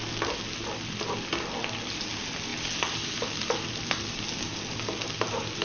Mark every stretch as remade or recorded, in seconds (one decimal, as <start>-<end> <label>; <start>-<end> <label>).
0.0-5.6 recorded